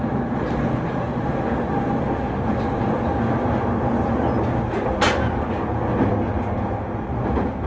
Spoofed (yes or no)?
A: no